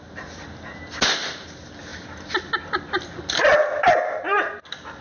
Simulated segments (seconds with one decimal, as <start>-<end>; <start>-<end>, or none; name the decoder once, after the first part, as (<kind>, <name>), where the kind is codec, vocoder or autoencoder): none